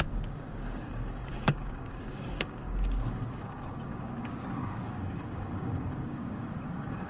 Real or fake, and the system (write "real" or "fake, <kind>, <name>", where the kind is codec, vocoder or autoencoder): fake, codec, DAC